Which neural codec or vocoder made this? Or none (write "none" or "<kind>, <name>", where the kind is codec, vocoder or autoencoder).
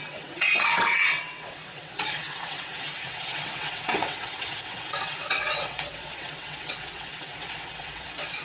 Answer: vocoder, WaveNeXt